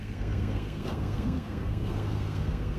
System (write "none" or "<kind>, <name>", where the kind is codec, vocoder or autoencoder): codec, SNAC